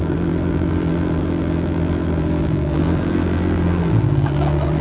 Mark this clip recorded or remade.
remade